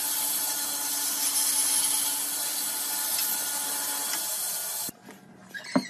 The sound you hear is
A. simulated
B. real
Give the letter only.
B